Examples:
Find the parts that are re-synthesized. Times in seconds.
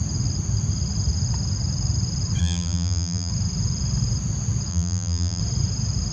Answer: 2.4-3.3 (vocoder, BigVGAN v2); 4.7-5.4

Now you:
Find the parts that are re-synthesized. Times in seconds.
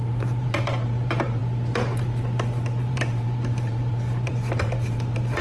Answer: 0.0-1.4 (vocoder, BigVGAN v2); 2.8-5.4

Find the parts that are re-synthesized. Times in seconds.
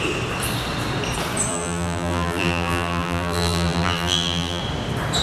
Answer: 1.5-4.6 (vocoder, BigVGAN v2)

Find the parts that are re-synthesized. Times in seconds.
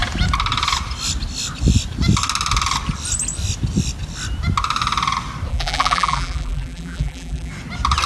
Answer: 5.5-7.5 (vocoder, BigVGAN v2)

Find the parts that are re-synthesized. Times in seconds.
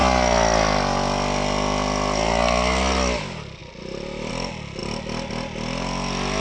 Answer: 3.6-4.3 (vocoder, BigVGAN v2)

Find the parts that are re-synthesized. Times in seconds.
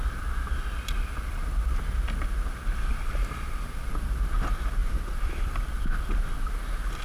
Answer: 4.8-5.8 (vocoder, BigVGAN v2)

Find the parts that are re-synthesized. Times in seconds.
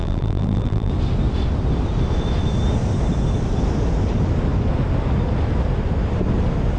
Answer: 0.0-0.9 (vocoder, BigVGAN v2)